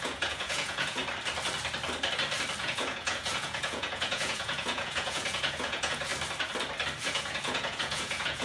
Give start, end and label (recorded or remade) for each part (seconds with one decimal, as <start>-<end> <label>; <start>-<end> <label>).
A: 0.0-1.0 remade; 1.0-2.6 recorded; 2.6-6.1 remade; 6.1-7.0 recorded; 7.0-8.4 remade